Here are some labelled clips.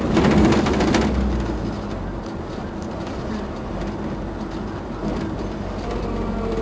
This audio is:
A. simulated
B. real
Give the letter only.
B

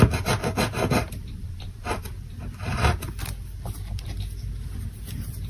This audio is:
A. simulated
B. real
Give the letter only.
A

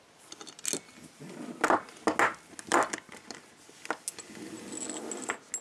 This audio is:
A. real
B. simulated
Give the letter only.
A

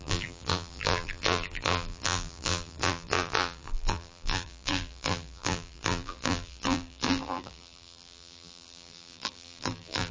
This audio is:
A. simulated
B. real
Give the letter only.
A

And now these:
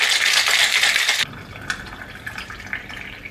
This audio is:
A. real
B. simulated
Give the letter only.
A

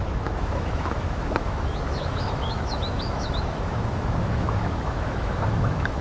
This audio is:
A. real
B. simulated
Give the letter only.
B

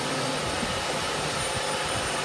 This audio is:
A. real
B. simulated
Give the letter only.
A